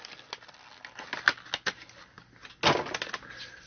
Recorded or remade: recorded